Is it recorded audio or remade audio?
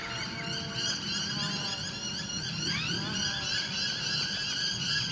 recorded